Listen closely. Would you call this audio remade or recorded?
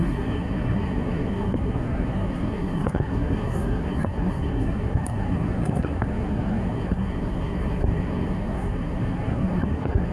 remade